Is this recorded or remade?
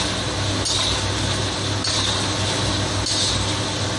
recorded